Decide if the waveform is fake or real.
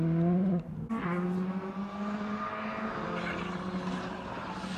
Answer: real